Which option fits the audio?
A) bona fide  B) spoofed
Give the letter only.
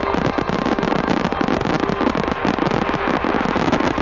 A